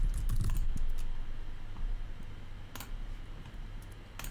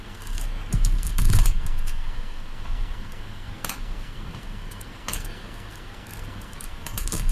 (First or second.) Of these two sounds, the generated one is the second